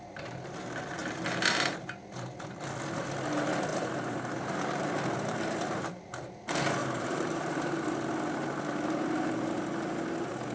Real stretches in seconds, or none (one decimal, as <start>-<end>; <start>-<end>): 0.0-3.7; 6.1-6.8; 7.7-10.5